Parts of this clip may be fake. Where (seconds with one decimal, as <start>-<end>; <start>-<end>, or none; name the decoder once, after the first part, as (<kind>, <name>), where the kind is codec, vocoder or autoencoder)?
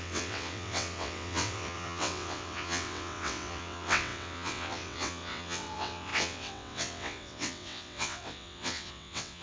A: 0.0-9.4 (vocoder, WaveNeXt)